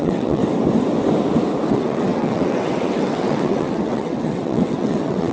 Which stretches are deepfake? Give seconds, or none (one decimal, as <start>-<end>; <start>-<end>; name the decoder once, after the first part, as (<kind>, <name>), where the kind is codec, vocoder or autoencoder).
0.0-0.4 (vocoder, WaveNeXt); 1.7-5.3